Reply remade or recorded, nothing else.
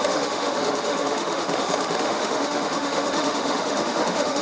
remade